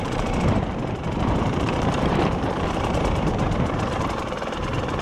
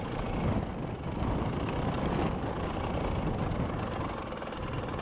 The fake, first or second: first